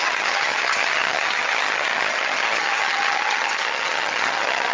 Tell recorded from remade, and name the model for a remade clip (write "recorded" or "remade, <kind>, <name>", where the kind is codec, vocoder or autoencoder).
remade, vocoder, HiFi-GAN